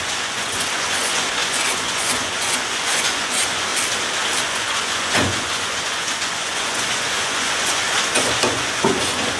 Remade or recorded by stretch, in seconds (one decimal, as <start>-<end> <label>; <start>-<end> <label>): 0.0-3.7 remade; 3.7-4.4 recorded; 4.4-9.4 remade